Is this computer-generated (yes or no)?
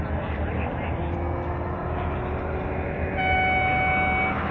no